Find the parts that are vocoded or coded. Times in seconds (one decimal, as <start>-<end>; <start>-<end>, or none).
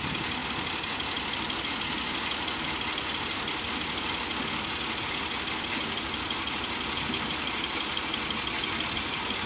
none